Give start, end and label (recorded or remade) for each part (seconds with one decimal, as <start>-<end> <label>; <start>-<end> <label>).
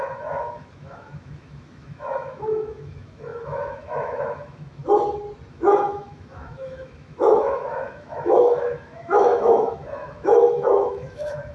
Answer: 0.0-4.8 remade; 4.8-5.5 recorded; 5.5-11.5 remade